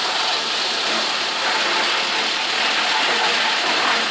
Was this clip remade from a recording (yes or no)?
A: no